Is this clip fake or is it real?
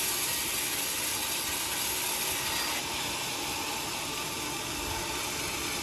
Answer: real